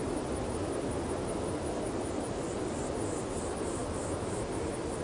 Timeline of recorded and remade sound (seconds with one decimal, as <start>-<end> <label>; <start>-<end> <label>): 0.0-5.0 recorded